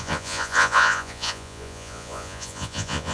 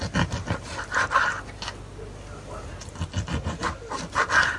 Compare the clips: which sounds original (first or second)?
second